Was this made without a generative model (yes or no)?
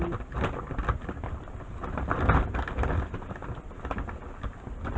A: yes